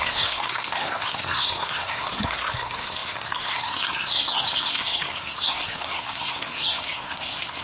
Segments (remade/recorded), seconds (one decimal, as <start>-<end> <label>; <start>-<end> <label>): 0.0-7.6 remade